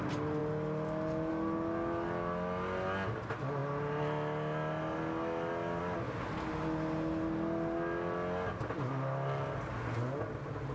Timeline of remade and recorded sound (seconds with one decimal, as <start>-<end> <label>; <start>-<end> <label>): 0.0-10.7 recorded